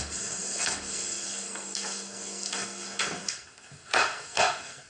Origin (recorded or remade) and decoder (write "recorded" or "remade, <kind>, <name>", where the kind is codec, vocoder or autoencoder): remade, codec, SNAC